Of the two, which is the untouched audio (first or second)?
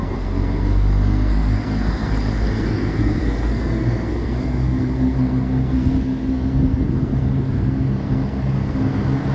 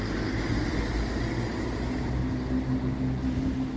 second